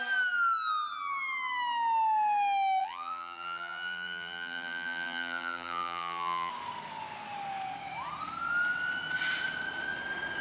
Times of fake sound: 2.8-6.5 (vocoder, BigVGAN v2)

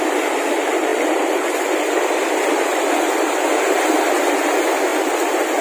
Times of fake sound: 0.9-4.3 (vocoder, BigVGAN v2); 4.9-5.6

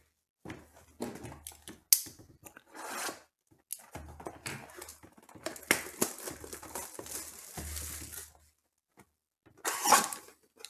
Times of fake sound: none